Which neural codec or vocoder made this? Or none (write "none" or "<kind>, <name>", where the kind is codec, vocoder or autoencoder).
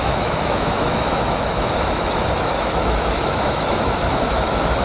autoencoder, DAC-VAE